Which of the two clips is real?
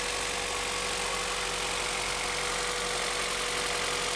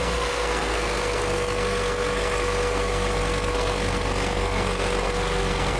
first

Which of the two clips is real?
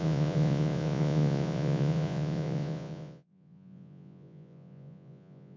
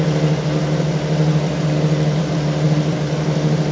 second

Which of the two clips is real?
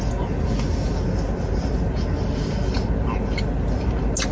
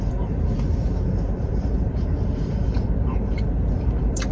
first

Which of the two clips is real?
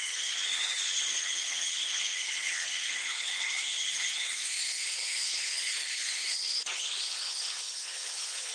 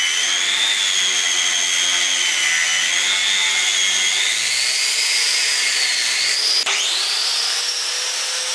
second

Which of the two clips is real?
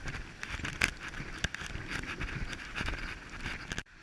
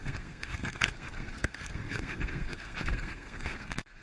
first